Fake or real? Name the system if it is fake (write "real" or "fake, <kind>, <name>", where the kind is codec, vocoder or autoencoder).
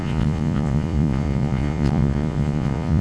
fake, vocoder, Vocos